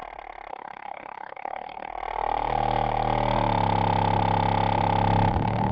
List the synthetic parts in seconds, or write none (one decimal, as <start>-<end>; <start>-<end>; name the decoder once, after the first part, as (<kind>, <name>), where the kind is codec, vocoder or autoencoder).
0.5-1.9 (codec, DAC); 5.3-5.7